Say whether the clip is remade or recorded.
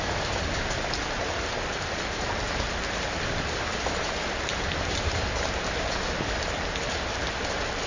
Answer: recorded